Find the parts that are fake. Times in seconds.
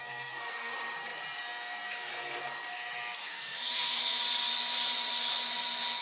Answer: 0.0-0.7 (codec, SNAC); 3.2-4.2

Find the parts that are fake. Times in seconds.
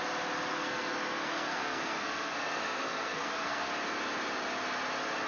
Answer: 0.5-3.7 (codec, SNAC)